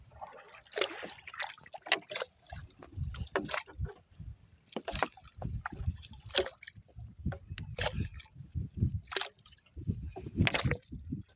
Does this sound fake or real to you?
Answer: real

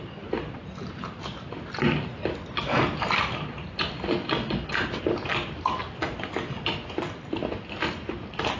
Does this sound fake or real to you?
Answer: real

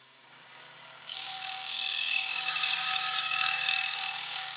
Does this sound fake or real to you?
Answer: fake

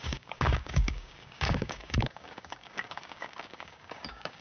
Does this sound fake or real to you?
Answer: fake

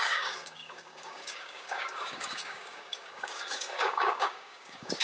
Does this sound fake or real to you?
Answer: fake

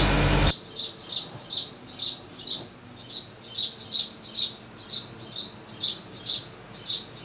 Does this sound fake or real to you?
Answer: real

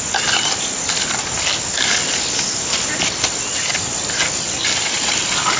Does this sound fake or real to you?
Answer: real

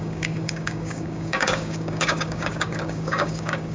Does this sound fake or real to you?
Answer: fake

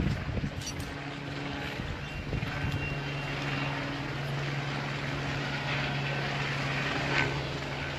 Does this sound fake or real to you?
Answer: real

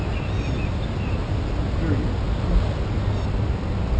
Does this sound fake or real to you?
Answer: real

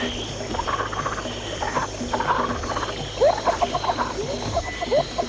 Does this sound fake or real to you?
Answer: real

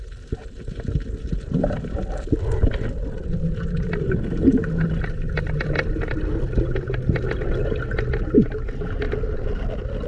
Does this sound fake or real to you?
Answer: real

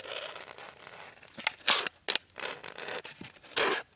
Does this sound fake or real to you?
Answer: real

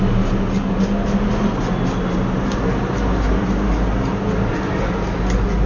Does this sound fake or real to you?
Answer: real